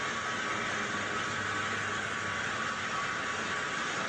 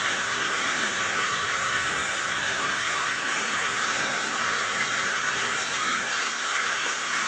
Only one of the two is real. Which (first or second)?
first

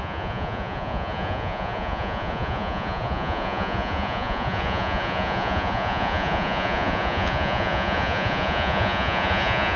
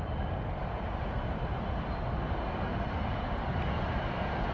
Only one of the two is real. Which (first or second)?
second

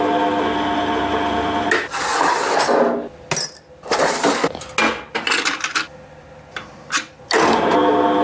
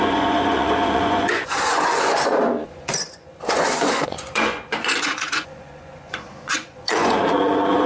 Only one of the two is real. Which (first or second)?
first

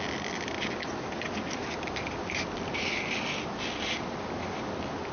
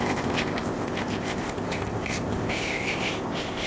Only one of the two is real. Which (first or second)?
first